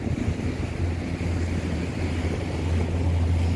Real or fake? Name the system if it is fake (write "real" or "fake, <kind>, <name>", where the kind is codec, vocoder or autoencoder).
real